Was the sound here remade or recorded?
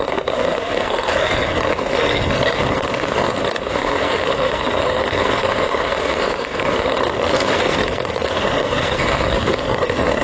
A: remade